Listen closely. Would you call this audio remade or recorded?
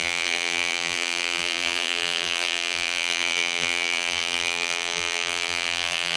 remade